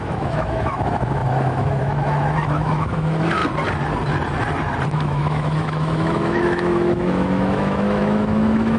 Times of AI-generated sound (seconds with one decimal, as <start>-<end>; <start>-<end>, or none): 0.0-3.4; 4.9-8.8